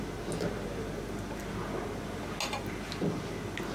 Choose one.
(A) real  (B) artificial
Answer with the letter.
A